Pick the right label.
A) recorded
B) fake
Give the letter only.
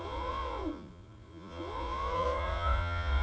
B